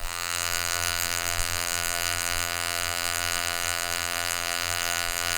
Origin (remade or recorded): remade